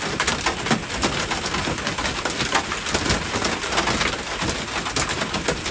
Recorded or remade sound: recorded